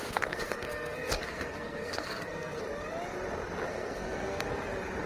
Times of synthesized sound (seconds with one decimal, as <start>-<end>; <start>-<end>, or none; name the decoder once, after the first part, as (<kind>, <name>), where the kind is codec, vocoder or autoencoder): 0.0-2.6 (codec, SNAC); 3.7-4.5